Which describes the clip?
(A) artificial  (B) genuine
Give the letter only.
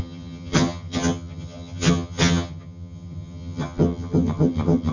A